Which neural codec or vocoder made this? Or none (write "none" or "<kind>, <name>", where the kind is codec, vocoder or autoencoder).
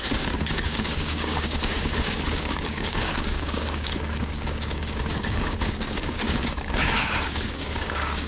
codec, DAC